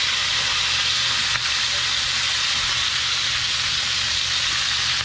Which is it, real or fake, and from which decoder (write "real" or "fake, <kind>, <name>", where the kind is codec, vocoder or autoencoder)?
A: real